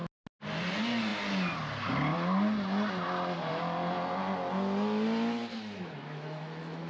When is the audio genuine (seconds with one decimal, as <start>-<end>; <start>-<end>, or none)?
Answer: 0.0-5.5